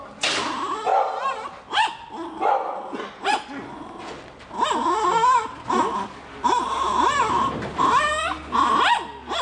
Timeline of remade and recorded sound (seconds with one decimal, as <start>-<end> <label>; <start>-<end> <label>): 0.0-9.4 recorded